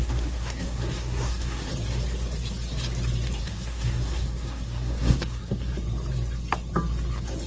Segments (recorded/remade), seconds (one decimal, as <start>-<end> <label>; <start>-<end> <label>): 0.0-1.7 remade; 1.7-3.4 recorded; 3.4-5.7 remade; 5.7-7.5 recorded